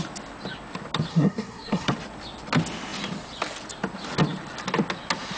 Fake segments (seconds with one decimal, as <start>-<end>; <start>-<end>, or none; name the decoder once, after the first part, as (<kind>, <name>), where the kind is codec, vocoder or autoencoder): 1.1-1.9 (codec, SNAC)